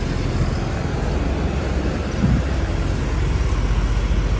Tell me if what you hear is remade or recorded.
recorded